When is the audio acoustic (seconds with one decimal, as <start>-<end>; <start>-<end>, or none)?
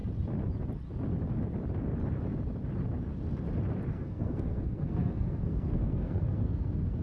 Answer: 0.0-3.9